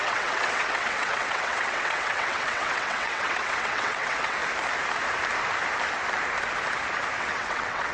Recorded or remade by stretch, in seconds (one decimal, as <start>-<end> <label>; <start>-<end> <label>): 0.0-4.4 remade; 4.4-7.2 recorded; 7.2-7.9 remade